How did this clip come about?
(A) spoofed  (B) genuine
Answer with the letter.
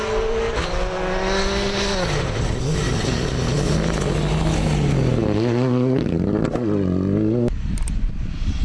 B